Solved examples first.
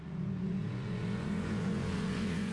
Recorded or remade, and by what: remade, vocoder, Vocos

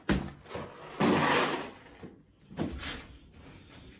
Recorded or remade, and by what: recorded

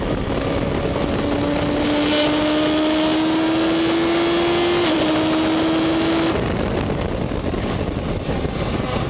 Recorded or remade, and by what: recorded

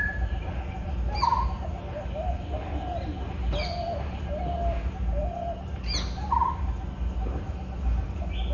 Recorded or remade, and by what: recorded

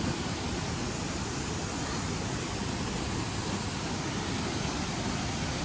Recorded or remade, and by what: recorded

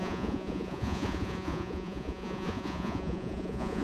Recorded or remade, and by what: remade, vocoder, Vocos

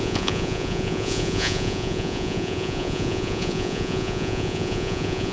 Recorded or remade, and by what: remade, vocoder, Vocos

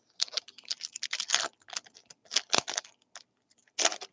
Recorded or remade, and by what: recorded